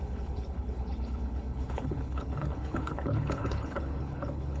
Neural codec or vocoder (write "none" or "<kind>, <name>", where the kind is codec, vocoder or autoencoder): codec, HILCodec